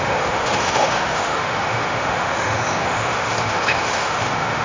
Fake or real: fake